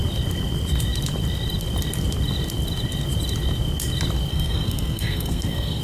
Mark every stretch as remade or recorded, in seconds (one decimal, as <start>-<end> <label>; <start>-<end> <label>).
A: 0.0-4.3 recorded; 4.3-5.8 remade